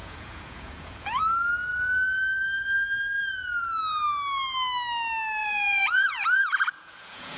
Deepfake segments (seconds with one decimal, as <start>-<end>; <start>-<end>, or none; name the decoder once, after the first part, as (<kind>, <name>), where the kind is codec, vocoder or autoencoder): 0.0-1.2 (vocoder, Vocos); 5.4-7.4